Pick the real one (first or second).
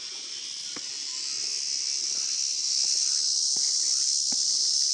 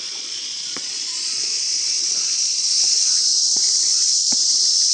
first